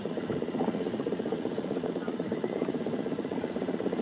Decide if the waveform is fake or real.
fake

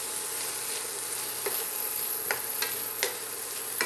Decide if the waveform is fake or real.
real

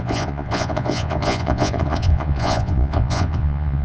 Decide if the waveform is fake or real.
fake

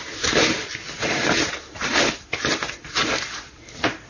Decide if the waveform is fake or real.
real